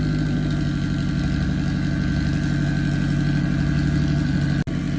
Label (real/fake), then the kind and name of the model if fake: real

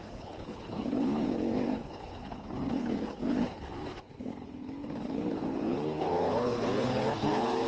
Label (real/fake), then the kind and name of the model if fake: fake, codec, HILCodec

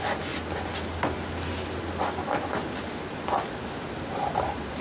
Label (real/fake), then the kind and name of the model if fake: real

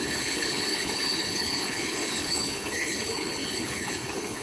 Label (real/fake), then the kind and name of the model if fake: fake, codec, HILCodec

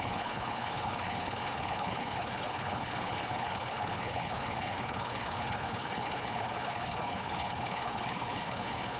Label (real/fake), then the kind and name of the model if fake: fake, codec, HILCodec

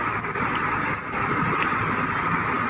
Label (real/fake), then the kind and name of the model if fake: real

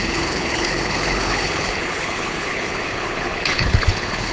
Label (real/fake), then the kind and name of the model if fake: fake, codec, HILCodec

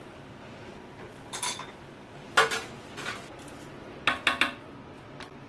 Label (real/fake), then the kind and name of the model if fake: real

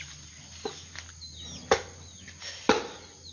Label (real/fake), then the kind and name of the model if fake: real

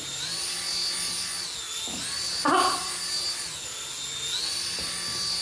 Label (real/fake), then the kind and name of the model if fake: real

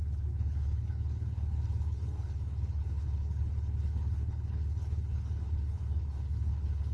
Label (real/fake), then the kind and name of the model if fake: fake, codec, HILCodec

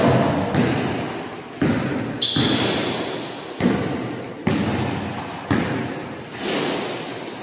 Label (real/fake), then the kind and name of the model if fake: real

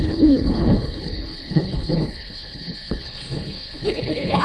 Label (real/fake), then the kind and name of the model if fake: fake, codec, HILCodec